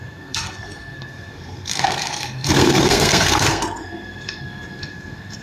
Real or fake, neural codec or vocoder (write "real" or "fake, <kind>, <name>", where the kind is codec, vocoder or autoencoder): fake, codec, SNAC